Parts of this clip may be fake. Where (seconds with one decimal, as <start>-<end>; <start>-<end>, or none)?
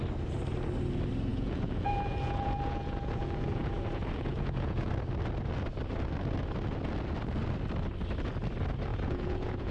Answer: 1.3-4.9; 8.9-9.7